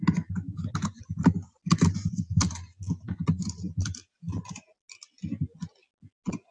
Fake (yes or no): no